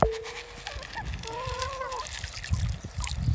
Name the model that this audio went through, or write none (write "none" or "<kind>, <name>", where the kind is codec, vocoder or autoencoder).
none